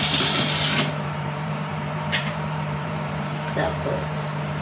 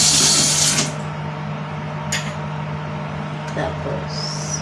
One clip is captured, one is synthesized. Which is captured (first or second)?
second